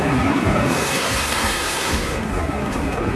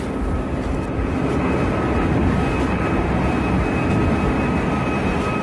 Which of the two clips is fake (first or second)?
first